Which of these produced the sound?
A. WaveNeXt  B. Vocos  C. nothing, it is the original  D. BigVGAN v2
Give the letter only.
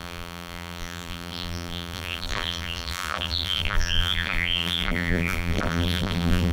D